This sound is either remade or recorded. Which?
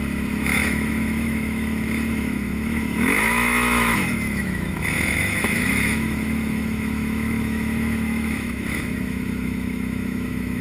remade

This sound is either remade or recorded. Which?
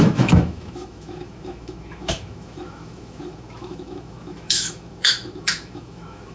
remade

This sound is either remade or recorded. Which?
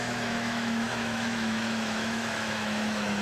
remade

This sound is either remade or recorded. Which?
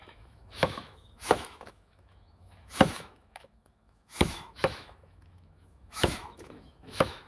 remade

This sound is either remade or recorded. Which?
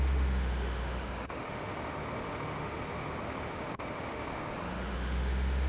remade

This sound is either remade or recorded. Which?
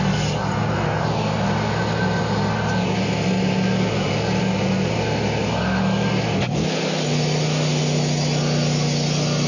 recorded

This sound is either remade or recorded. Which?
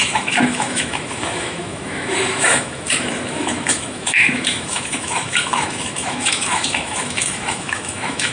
remade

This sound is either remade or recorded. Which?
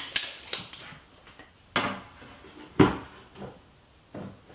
recorded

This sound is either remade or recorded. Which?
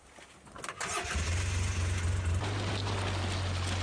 recorded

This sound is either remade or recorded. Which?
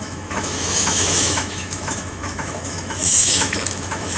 remade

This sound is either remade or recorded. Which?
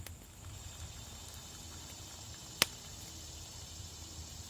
recorded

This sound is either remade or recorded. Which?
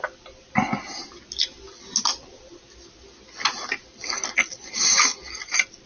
recorded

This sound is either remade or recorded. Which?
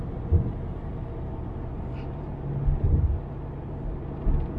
recorded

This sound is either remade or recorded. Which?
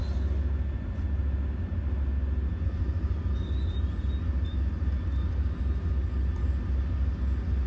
recorded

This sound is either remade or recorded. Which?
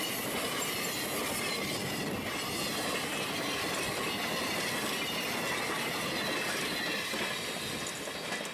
recorded